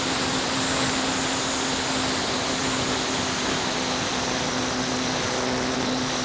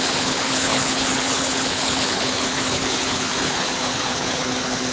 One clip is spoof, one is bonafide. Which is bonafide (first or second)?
first